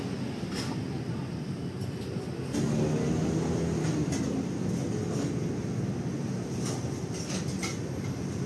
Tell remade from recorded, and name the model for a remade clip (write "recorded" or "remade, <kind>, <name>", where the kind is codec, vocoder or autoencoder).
recorded